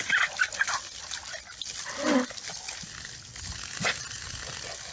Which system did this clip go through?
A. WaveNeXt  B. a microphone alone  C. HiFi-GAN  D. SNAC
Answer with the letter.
B